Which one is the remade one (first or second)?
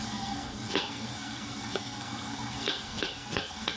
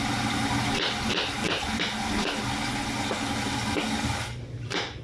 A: first